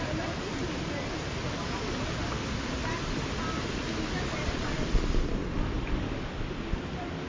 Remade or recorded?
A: recorded